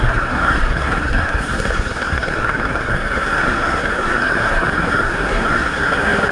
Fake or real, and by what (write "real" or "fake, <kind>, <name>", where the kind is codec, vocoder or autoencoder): fake, codec, SNAC